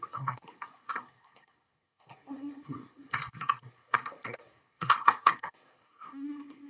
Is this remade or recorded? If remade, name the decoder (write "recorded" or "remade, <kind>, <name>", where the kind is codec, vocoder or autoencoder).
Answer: remade, codec, SNAC